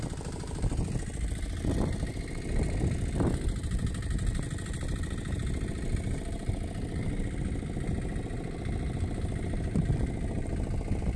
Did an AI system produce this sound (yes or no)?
no